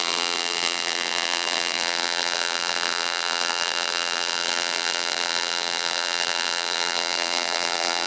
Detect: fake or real fake